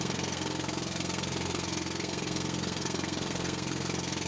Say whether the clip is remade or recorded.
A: remade